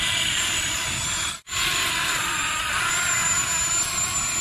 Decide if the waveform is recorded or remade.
recorded